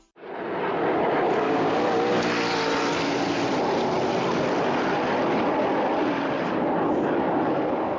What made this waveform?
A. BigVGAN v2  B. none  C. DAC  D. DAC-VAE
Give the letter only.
B